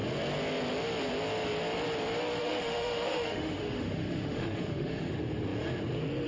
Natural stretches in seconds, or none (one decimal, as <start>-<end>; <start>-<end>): 0.0-2.4; 5.1-6.3